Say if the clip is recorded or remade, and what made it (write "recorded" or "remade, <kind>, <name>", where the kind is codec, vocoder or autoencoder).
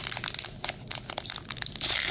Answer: recorded